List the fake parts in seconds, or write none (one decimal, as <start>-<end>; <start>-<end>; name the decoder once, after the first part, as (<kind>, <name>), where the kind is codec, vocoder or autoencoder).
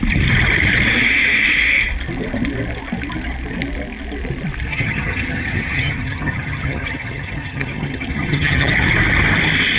4.7-8.7 (vocoder, HiFi-GAN)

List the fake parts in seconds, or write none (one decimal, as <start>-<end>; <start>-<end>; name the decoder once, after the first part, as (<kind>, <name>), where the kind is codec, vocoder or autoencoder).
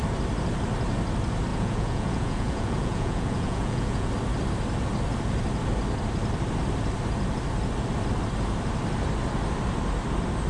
1.5-4.1 (vocoder, Vocos)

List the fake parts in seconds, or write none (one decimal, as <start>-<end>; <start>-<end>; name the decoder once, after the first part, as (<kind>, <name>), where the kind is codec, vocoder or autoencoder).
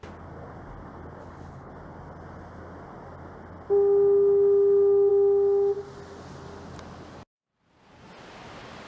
1.2-1.7 (codec, HILCodec)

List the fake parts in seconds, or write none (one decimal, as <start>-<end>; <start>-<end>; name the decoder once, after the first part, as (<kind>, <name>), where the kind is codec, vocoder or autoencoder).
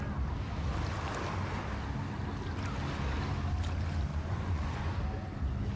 4.1-5.0 (vocoder, Vocos)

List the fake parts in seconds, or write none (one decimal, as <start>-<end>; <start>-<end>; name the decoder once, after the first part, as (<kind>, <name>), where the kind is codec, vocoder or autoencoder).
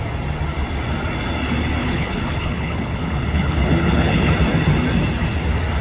1.8-4.3 (codec, HILCodec)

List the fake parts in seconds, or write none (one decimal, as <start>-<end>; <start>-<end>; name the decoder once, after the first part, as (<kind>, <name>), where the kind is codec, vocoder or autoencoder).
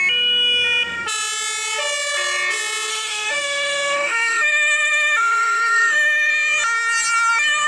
2.9-6.3 (autoencoder, DAC-VAE)